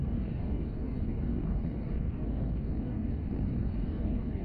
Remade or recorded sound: remade